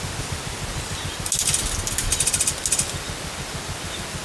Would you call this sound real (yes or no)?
yes